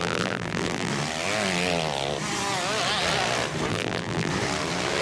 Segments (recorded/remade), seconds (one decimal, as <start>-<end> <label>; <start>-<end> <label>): 0.0-0.9 remade; 0.9-3.7 recorded; 3.7-4.3 remade; 4.3-5.0 recorded

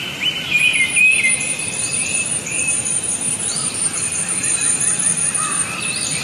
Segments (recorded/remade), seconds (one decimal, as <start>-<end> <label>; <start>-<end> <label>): 0.0-0.7 remade; 0.7-1.6 recorded; 1.6-2.9 remade; 2.9-3.4 recorded; 3.4-6.2 remade

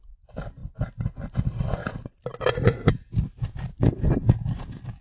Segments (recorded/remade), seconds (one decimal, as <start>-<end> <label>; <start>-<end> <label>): 0.0-5.0 recorded

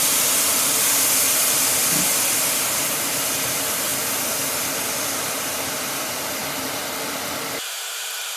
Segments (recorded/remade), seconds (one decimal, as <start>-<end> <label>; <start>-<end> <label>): 0.0-0.5 remade; 0.5-2.4 recorded; 2.4-3.9 remade; 3.9-5.4 recorded; 5.4-6.4 remade; 6.4-7.5 recorded; 7.5-8.4 remade